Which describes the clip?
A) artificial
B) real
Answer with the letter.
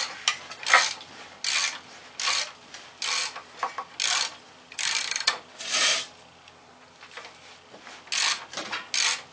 B